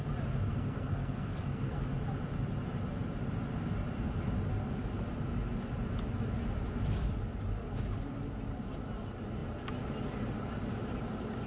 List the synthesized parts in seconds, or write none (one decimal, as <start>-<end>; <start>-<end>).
0.5-1.9